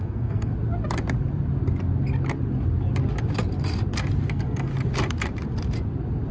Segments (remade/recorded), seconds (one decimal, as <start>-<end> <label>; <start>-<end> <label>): 0.0-0.5 remade; 0.5-4.3 recorded; 4.3-4.7 remade; 4.7-6.3 recorded